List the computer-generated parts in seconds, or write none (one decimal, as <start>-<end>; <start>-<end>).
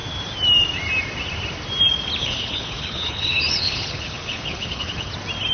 2.2-5.1